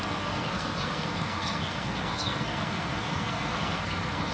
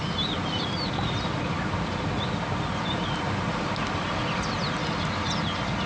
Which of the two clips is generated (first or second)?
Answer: first